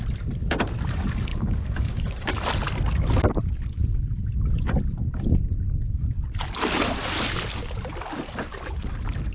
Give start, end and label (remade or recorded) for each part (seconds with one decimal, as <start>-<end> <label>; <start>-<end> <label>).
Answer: 0.0-1.3 recorded; 1.3-2.3 remade; 2.3-9.3 recorded